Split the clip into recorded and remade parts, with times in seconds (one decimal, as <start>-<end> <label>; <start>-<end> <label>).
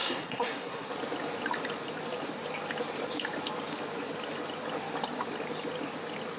0.0-0.9 remade; 0.9-6.4 recorded